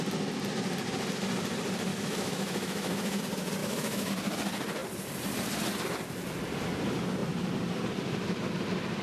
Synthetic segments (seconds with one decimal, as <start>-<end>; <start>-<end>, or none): 1.9-3.2; 3.6-4.1